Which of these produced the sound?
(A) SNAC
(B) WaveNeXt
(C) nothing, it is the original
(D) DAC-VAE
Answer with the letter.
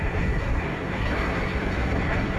A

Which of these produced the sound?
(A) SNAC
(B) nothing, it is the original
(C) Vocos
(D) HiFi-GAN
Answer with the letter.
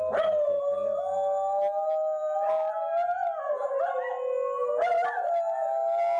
B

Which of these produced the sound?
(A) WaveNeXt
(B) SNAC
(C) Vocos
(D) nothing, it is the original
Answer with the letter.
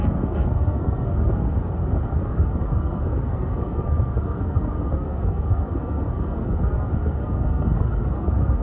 B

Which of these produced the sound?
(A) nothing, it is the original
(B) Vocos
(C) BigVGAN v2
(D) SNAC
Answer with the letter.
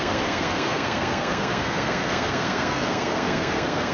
D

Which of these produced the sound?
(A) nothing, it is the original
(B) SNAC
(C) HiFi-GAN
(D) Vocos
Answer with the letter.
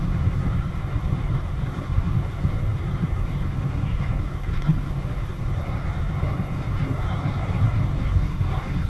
B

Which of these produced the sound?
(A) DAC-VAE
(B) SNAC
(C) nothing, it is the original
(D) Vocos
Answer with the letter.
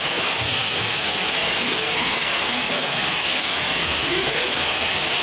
B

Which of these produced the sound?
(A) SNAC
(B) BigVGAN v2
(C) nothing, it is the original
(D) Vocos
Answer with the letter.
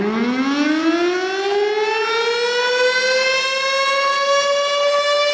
C